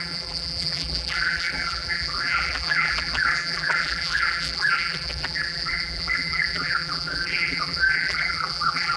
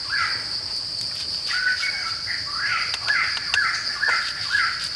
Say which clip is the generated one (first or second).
first